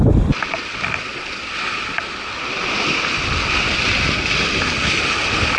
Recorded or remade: recorded